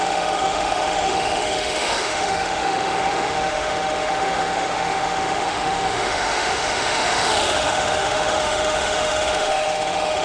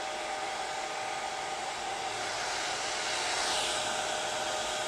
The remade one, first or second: first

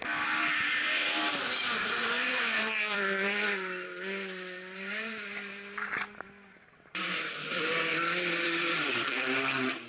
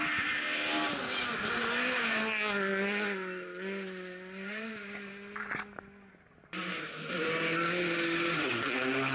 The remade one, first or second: first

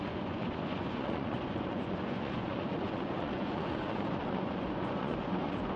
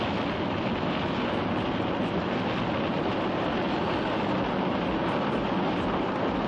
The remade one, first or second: first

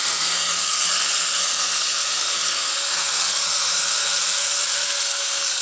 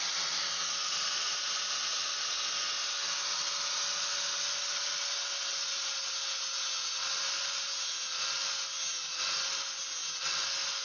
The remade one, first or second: first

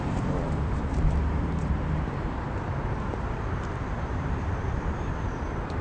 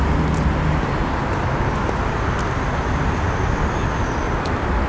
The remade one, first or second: first